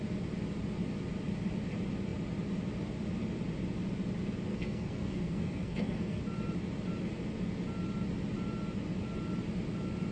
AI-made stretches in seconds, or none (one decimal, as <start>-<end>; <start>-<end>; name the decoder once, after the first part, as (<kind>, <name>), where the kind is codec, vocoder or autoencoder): 4.5-6.2 (codec, SNAC)